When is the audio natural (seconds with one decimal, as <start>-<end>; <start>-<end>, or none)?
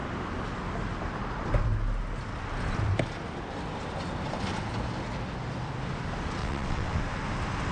0.0-6.4; 7.0-7.7